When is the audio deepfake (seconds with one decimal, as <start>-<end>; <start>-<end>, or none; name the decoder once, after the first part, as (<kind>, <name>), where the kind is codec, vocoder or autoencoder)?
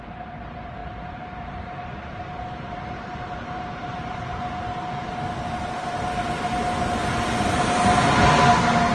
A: 0.8-4.4 (vocoder, BigVGAN v2)